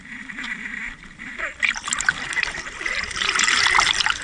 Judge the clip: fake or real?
fake